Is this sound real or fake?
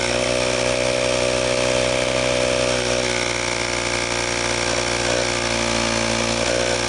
real